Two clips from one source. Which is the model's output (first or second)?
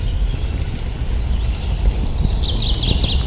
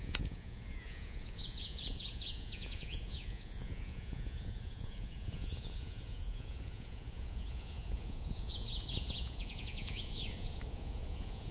second